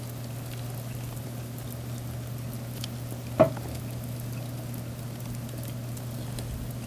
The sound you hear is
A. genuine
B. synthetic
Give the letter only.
A